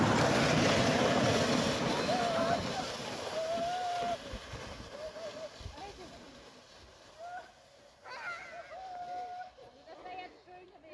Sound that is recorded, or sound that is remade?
recorded